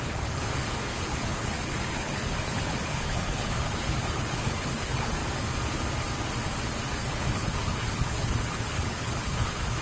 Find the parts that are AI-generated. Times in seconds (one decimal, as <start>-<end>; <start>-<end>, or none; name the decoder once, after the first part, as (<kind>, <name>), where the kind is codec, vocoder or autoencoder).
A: 0.0-5.2 (codec, HILCodec); 7.1-9.8